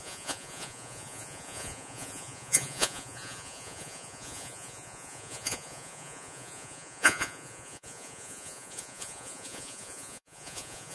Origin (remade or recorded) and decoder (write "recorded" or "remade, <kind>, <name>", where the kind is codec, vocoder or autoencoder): remade, vocoder, Vocos